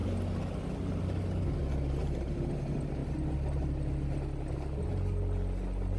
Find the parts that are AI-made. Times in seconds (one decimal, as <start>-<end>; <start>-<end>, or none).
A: 2.0-2.5